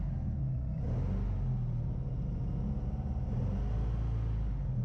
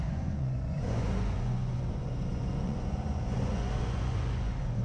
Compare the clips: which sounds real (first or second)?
first